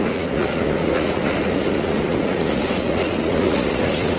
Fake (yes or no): yes